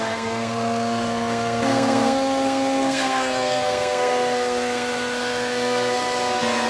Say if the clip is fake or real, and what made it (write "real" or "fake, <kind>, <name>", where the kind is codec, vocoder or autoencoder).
fake, codec, SNAC